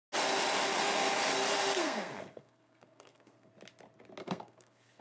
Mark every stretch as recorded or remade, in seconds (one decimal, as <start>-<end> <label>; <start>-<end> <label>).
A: 0.0-1.8 recorded; 1.8-3.5 remade; 3.5-4.2 recorded; 4.2-5.0 remade